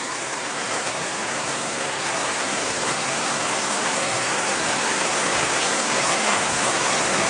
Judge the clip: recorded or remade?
remade